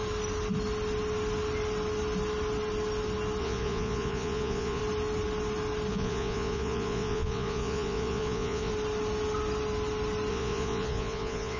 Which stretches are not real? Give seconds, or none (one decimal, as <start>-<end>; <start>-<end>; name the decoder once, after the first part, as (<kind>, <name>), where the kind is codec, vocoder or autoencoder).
3.4-4.8 (vocoder, Vocos); 5.9-8.7; 10.3-11.6